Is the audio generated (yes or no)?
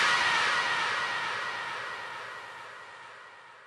no